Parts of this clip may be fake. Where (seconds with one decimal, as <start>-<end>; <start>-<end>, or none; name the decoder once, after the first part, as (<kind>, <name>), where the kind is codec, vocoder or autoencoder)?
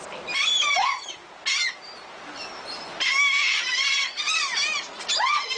0.0-4.5 (vocoder, BigVGAN v2); 5.0-5.6